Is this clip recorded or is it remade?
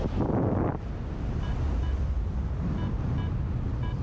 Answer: recorded